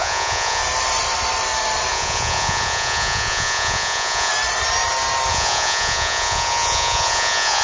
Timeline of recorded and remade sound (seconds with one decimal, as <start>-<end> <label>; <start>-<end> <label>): 0.0-0.6 remade; 0.6-1.9 recorded; 1.9-4.3 remade; 4.3-5.3 recorded; 5.3-7.6 remade